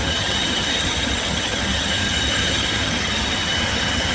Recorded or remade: remade